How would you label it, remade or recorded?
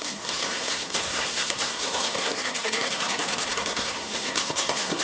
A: remade